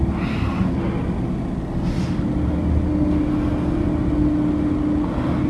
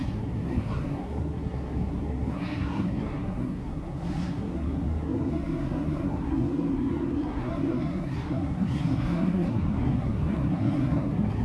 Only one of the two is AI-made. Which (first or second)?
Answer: second